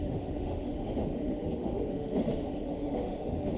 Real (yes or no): no